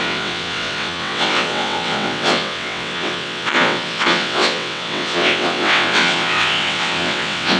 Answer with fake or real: fake